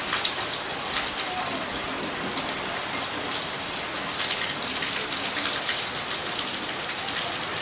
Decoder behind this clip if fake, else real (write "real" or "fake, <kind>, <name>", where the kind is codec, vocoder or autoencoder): real